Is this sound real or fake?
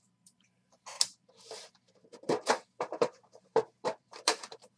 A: fake